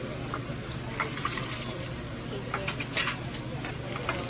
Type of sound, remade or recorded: recorded